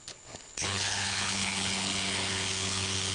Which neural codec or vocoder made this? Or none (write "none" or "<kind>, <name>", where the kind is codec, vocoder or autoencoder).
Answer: codec, HILCodec